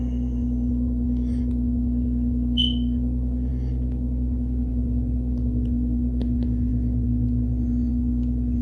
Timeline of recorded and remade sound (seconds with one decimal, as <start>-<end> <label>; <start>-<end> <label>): 0.0-8.6 recorded